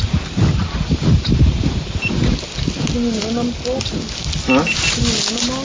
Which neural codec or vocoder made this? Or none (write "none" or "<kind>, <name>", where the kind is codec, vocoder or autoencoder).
none